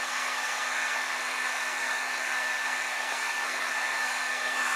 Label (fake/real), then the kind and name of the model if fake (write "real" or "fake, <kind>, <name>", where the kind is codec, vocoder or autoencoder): fake, codec, SNAC